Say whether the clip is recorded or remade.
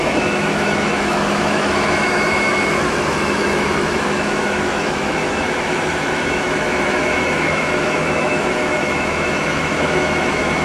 remade